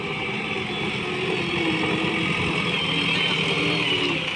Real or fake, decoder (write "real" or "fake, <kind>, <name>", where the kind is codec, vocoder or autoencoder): real